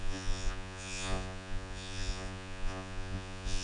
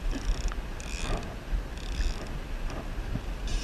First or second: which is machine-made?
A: first